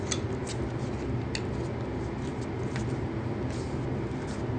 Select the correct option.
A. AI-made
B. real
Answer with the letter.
B